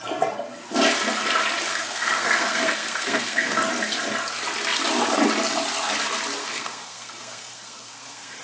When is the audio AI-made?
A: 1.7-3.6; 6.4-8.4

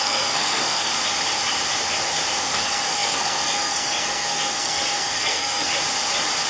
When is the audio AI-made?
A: 0.0-0.9; 2.4-5.7

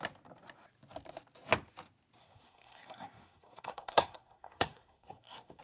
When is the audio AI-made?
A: 2.2-5.6

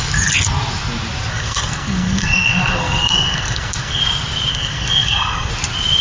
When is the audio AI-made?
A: 1.3-4.0; 4.5-5.5